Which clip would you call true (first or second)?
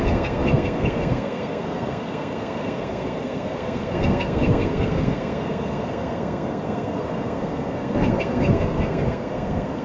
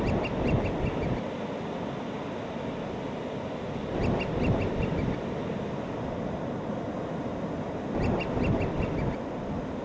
second